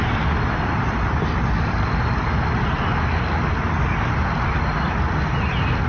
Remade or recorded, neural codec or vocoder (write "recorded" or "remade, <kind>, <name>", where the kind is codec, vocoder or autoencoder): recorded